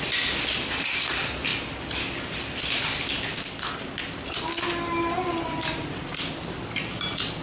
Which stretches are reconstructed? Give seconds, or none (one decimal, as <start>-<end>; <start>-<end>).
none